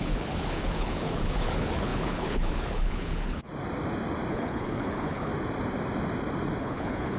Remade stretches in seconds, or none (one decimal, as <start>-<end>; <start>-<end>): 0.0-3.5; 4.3-5.3; 6.6-7.2